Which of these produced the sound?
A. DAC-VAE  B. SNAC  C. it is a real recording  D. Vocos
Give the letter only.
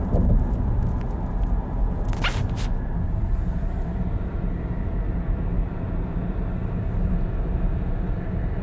C